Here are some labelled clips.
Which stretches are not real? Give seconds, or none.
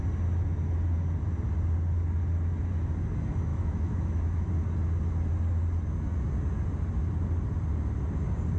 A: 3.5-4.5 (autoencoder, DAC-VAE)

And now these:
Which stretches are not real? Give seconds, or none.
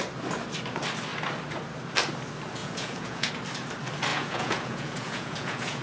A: 2.6-3.3 (vocoder, Vocos); 4.1-5.8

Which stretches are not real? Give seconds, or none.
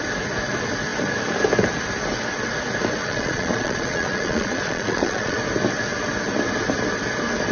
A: 3.0-5.4 (vocoder, Vocos)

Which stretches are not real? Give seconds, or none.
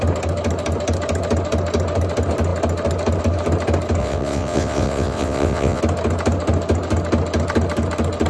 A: 4.0-5.8 (vocoder, WaveNeXt)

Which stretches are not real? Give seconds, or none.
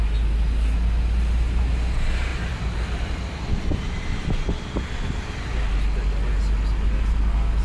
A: 2.3-5.2 (vocoder, BigVGAN v2)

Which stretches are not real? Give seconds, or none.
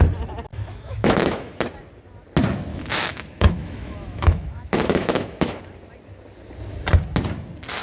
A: 0.5-1.6 (autoencoder, DAC-VAE); 2.7-5.6